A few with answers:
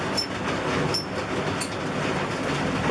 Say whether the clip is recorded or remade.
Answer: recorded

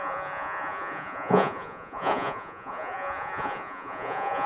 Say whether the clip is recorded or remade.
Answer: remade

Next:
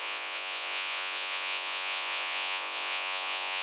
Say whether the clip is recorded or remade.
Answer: remade